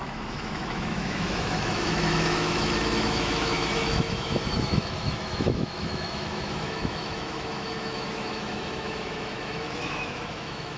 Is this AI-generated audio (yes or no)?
yes